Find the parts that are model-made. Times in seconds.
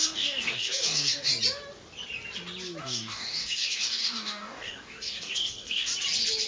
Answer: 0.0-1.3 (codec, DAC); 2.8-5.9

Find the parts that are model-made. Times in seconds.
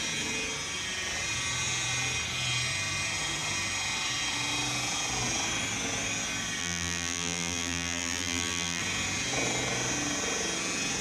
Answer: 6.6-8.8 (vocoder, BigVGAN v2)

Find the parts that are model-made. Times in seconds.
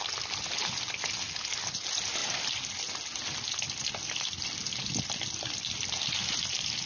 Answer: none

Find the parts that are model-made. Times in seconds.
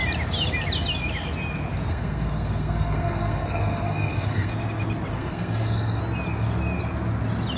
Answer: 1.9-4.5 (codec, SNAC); 5.1-6.0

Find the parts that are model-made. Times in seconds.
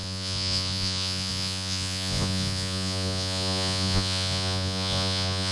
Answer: 0.0-5.5 (vocoder, Vocos)